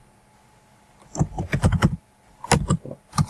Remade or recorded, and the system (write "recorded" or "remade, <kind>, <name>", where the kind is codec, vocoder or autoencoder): recorded